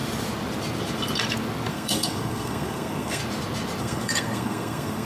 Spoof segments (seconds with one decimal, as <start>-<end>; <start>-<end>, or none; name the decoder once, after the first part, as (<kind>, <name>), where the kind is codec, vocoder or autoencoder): 1.7-3.2 (codec, SNAC); 3.8-5.0